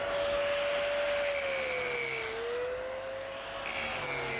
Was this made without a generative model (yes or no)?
yes